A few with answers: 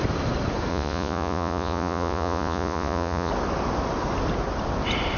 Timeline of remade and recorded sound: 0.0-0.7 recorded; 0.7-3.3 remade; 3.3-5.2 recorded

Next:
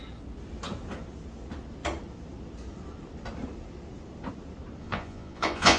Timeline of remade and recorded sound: 0.0-4.8 recorded; 4.8-5.8 remade

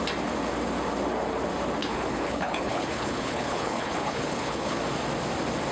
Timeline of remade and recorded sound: 0.0-1.8 recorded; 1.8-4.8 remade; 4.8-5.7 recorded

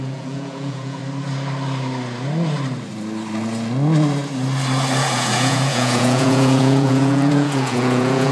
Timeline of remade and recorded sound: 0.0-1.0 remade; 1.0-5.1 recorded; 5.1-8.3 remade

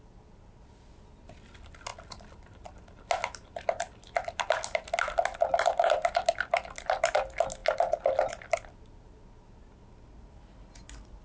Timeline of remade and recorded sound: 0.0-11.2 recorded